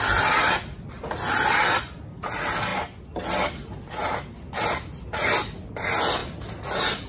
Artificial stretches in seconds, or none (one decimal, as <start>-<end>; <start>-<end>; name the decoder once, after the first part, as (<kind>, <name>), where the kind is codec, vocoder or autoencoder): none